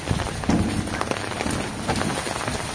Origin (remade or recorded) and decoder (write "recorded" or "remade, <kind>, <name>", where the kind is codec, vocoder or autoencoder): recorded